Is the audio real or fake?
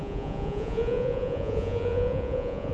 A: fake